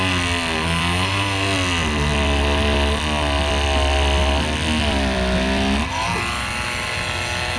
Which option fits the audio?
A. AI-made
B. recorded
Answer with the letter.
B